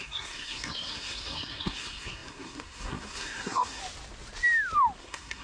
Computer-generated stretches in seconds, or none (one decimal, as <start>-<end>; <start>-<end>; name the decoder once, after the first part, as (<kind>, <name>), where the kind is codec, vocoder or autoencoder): 0.0-3.8 (codec, SNAC); 5.0-5.4